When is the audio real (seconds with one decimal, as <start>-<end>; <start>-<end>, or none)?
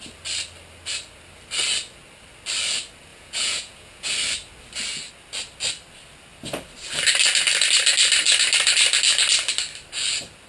0.0-3.1; 4.1-10.5